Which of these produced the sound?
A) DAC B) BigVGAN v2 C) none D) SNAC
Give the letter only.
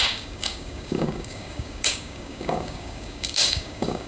A